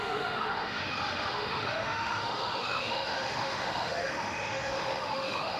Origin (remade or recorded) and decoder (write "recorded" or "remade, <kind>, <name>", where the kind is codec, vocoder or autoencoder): remade, autoencoder, DAC-VAE